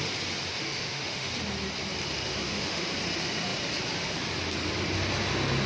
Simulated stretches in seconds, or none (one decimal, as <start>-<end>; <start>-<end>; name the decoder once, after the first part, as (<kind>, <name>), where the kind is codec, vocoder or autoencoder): 0.5-1.3 (autoencoder, DAC-VAE); 2.3-2.9